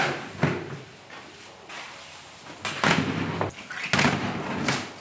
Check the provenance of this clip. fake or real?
real